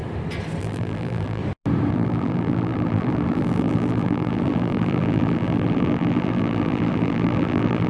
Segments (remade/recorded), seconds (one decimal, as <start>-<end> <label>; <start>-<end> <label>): 0.0-0.6 recorded; 0.6-1.4 remade; 1.4-1.9 recorded; 1.9-7.9 remade